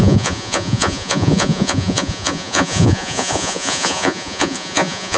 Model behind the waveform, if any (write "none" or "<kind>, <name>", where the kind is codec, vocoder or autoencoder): vocoder, Vocos